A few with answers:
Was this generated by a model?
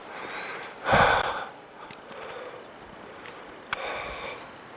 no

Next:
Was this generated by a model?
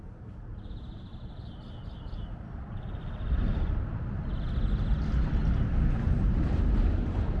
no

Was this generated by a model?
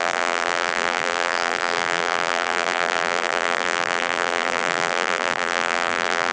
yes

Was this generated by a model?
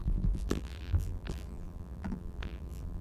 yes